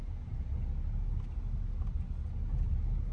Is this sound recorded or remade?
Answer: recorded